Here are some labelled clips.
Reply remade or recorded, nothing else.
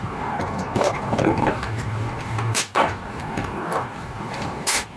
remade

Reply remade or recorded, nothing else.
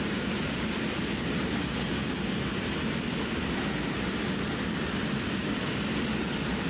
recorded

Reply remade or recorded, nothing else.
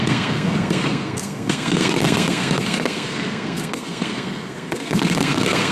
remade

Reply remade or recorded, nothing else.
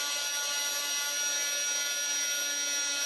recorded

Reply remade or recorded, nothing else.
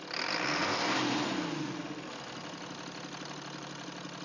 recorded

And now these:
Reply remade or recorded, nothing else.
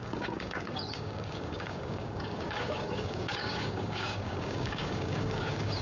remade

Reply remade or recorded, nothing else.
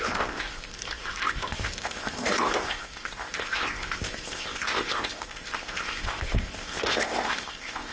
remade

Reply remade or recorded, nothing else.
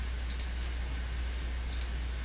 recorded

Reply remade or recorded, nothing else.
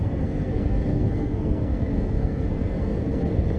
remade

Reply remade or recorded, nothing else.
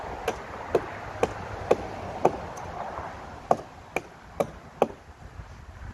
recorded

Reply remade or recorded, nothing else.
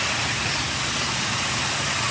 recorded